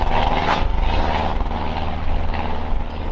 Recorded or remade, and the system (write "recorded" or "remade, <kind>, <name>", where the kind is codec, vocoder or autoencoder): recorded